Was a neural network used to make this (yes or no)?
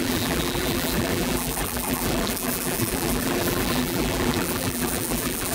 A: yes